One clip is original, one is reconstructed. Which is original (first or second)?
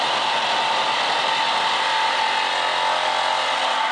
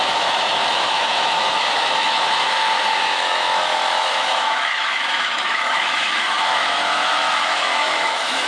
first